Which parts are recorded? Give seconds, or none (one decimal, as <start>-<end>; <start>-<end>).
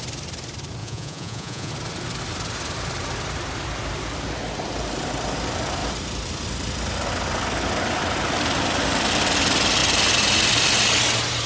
0.0-0.8; 1.7-11.5